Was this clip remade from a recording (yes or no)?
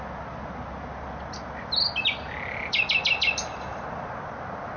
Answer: no